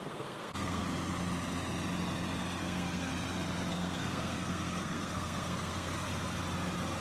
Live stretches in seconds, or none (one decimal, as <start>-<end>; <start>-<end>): 0.8-2.6; 3.1-3.7; 6.1-7.0